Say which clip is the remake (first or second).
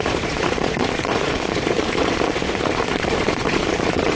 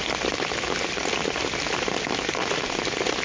first